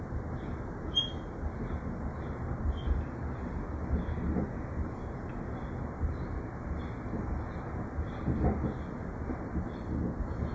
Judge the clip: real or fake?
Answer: real